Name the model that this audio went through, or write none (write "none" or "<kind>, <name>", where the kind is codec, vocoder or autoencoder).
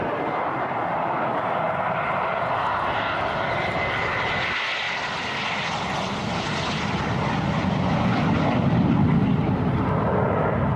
none